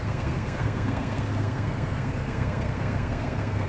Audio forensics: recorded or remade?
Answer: remade